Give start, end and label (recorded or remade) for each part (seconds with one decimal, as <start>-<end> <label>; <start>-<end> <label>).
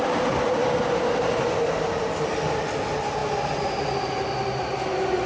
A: 0.0-5.3 recorded